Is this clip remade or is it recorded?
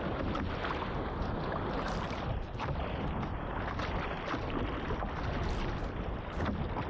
recorded